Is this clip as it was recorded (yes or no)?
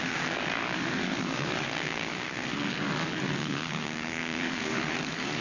no